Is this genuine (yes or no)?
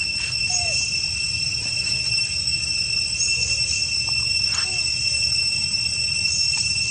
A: yes